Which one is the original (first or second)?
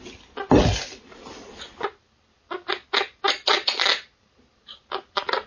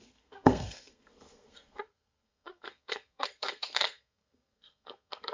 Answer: first